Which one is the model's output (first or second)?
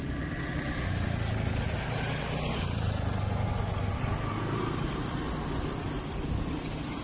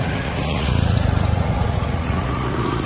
second